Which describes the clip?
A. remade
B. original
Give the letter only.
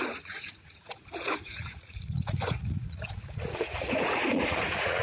A